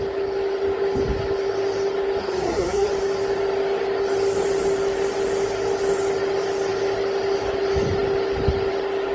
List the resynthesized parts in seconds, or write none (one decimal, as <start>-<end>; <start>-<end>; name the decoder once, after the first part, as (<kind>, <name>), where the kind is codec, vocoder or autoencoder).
2.2-2.9 (codec, SNAC)